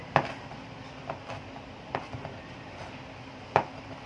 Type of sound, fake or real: real